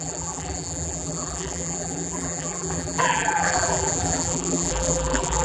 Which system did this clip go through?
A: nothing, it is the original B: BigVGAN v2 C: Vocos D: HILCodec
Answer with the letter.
B